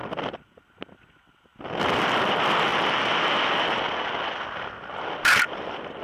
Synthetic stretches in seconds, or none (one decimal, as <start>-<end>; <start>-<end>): none